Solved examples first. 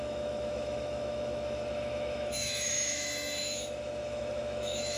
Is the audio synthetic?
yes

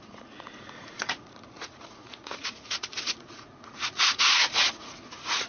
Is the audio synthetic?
yes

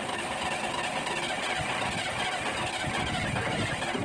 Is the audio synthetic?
no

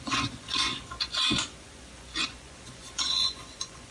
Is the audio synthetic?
yes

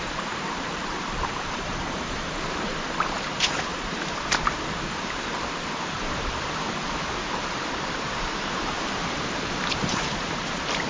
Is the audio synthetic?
yes